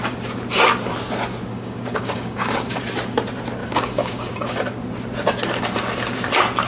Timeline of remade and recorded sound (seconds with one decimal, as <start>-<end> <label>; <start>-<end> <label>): 0.0-1.5 recorded; 1.5-2.8 remade; 2.8-3.6 recorded; 3.6-4.3 remade; 4.3-6.7 recorded